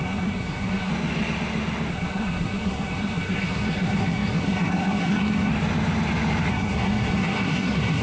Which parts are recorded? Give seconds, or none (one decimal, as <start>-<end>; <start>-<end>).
0.9-1.9; 5.5-6.5